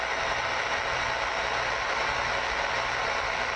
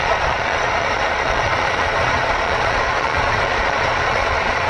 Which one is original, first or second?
first